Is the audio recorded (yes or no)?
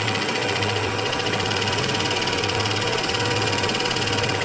no